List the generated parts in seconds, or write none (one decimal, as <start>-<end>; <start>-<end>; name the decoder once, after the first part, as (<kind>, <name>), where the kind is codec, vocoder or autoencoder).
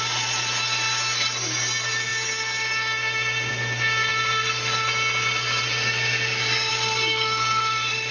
none